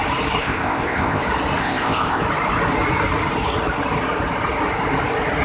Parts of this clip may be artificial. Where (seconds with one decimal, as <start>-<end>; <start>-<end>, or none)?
0.4-1.2; 1.6-2.2